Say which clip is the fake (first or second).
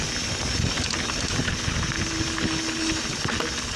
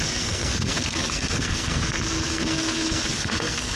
second